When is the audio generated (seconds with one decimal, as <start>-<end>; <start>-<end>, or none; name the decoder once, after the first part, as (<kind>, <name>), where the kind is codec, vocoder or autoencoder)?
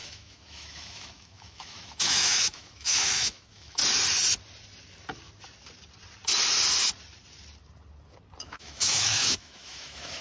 0.0-3.8 (autoencoder, DAC-VAE); 8.4-10.2